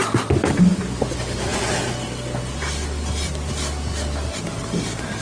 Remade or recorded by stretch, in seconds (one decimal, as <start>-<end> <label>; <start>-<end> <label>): 0.0-5.2 recorded